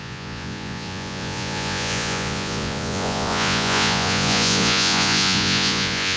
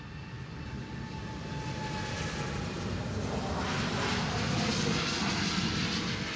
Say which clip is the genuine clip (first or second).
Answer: second